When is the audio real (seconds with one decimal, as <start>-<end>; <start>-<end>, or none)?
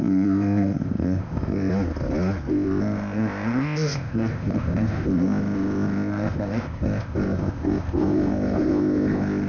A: 1.7-2.5